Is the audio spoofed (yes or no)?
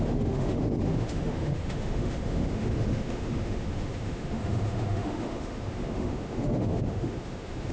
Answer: yes